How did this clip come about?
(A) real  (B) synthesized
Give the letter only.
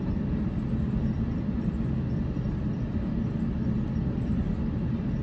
A